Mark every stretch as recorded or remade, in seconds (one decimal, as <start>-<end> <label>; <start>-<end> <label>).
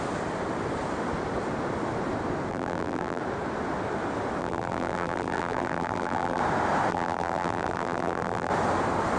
0.0-2.5 recorded; 2.5-3.2 remade; 3.2-4.4 recorded; 4.4-6.4 remade; 6.4-6.9 recorded; 6.9-8.5 remade; 8.5-9.2 recorded